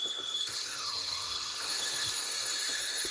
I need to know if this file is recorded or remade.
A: remade